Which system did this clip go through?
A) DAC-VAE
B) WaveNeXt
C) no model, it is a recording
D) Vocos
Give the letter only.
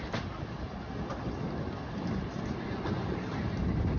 C